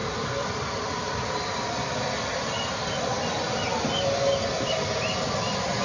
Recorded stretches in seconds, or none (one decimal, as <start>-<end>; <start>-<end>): 0.8-5.8